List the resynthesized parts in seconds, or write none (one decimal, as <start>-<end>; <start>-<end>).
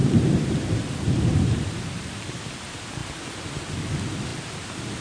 0.0-2.3